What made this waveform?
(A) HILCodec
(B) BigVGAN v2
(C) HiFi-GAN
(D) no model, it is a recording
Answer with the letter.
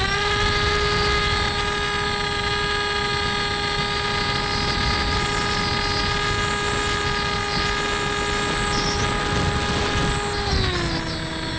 D